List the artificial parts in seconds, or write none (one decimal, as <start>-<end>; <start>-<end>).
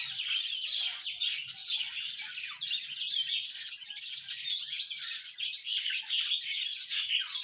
none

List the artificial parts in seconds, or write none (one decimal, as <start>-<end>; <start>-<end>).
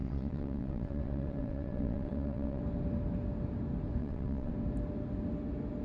0.0-2.6; 4.0-4.5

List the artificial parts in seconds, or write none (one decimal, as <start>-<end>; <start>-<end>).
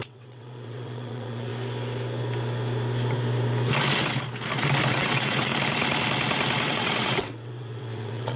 0.0-1.5; 4.9-5.5; 6.7-8.4